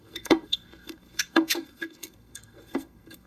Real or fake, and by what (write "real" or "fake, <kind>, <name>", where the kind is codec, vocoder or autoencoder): fake, codec, SNAC